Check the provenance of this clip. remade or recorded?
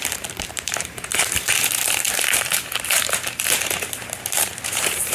remade